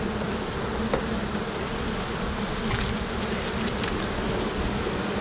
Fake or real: real